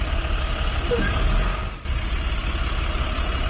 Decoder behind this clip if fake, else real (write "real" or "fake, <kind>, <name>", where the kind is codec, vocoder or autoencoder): real